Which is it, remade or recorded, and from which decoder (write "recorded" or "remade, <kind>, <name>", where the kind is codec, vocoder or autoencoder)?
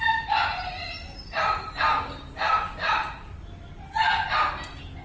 remade, vocoder, BigVGAN v2